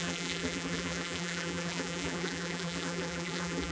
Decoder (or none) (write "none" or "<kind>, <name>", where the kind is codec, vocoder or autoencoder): vocoder, BigVGAN v2